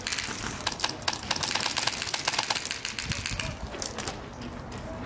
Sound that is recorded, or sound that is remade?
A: recorded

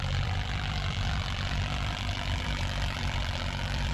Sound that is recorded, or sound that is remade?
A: remade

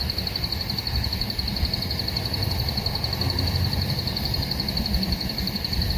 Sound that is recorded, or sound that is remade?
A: remade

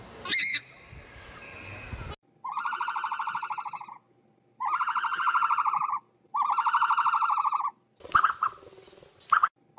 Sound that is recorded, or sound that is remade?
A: recorded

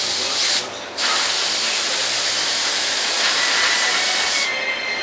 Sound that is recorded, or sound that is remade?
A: recorded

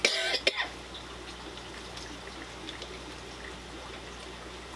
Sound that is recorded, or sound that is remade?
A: recorded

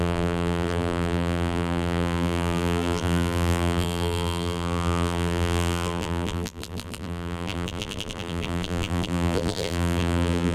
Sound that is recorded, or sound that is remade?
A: remade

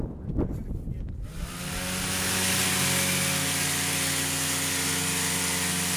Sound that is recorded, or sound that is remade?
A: recorded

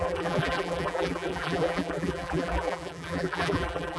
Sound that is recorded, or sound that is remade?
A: remade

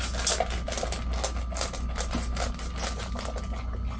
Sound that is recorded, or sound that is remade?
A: recorded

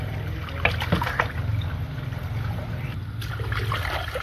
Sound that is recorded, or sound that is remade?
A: recorded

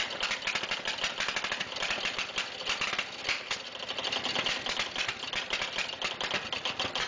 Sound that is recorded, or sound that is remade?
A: recorded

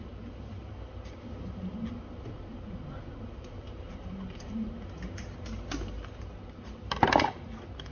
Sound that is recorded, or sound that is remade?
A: remade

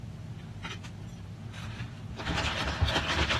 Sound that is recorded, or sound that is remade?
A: recorded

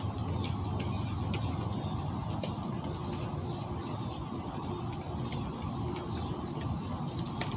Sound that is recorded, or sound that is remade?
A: recorded